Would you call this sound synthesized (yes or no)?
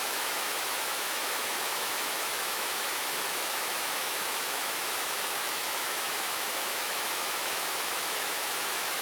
yes